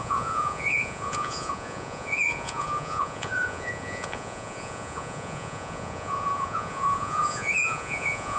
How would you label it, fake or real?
fake